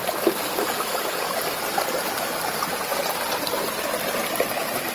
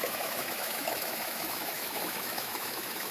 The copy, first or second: second